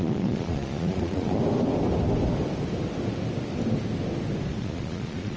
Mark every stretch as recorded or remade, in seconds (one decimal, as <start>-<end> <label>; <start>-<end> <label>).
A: 0.0-1.4 remade; 1.4-4.6 recorded; 4.6-5.4 remade